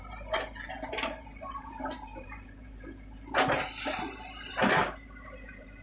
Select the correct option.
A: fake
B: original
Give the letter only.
A